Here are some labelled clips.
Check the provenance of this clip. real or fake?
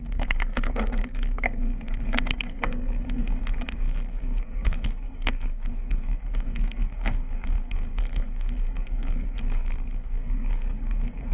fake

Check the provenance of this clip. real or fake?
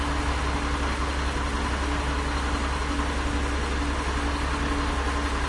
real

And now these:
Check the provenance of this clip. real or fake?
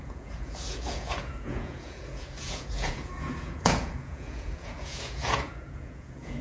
fake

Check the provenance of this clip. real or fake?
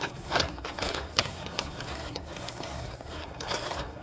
fake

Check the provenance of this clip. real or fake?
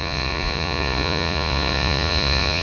fake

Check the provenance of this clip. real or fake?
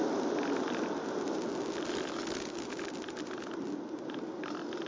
real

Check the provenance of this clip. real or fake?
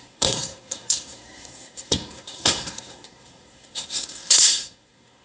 fake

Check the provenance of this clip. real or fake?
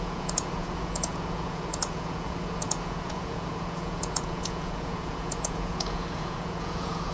fake